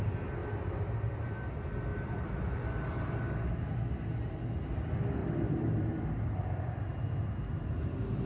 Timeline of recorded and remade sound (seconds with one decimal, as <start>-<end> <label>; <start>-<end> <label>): 0.0-0.4 recorded; 0.4-1.4 remade; 1.4-5.2 recorded; 5.2-7.5 remade; 7.5-8.3 recorded